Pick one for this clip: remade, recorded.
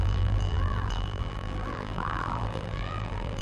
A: remade